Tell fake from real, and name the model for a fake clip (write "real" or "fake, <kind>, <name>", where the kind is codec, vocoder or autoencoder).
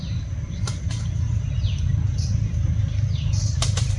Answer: real